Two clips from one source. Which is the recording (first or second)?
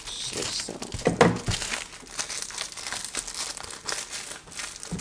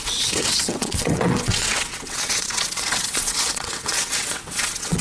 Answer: first